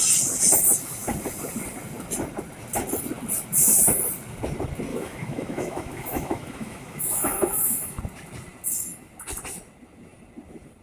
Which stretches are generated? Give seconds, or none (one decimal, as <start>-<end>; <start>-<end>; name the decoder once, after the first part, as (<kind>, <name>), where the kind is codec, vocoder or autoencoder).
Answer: 4.9-8.0 (autoencoder, DAC-VAE)